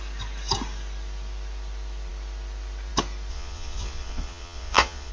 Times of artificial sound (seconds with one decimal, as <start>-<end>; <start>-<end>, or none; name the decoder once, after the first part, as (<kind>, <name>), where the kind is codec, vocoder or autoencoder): 3.3-5.1 (vocoder, Vocos)